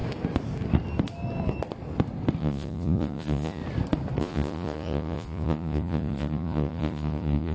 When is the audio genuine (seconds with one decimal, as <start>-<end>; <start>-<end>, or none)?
0.0-2.4; 3.6-4.2